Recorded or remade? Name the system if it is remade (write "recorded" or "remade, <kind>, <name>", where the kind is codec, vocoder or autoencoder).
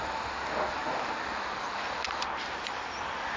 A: recorded